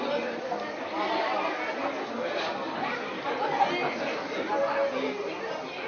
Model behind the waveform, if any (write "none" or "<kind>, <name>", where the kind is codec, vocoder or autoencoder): none